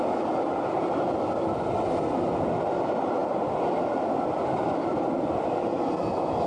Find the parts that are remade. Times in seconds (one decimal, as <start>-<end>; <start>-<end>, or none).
3.2-3.9